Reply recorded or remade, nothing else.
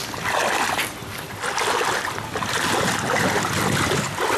recorded